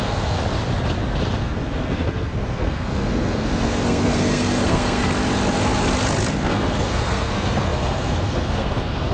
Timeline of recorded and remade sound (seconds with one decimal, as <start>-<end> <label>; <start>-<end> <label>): 0.0-0.4 remade; 0.4-1.4 recorded; 1.4-5.0 remade; 5.0-6.3 recorded; 6.3-9.1 remade